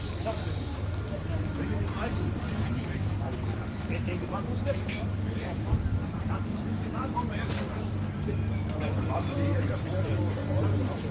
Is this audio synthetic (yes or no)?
yes